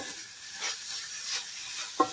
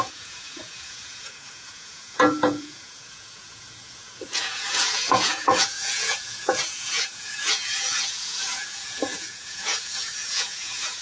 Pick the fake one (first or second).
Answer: second